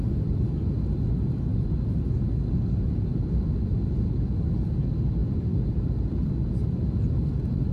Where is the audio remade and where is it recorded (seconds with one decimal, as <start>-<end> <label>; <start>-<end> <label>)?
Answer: 0.0-7.7 recorded